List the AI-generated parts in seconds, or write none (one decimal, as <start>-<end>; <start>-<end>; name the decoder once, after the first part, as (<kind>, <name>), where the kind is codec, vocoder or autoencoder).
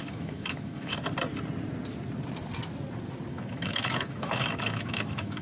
0.0-0.9 (autoencoder, DAC-VAE); 3.3-5.4